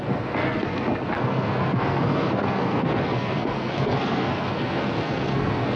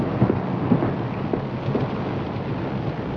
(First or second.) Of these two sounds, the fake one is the first